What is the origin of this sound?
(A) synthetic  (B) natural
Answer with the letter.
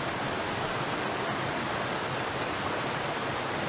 B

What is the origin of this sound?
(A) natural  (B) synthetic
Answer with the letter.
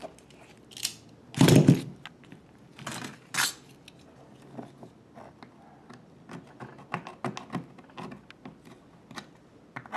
A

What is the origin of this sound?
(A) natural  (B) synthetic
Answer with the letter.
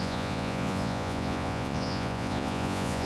B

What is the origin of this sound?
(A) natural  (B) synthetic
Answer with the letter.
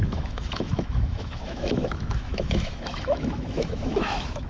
B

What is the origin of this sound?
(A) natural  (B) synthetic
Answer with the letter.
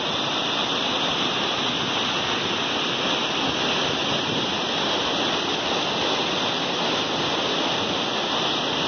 A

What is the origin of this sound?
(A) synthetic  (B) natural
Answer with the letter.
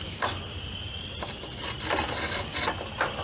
B